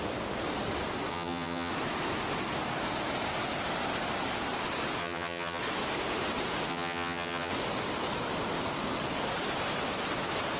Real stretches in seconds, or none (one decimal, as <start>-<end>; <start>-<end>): 0.0-1.1; 1.7-5.0; 5.6-6.7; 7.5-10.6